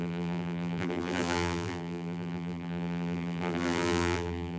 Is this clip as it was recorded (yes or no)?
no